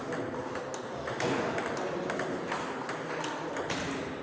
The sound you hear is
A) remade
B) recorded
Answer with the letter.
B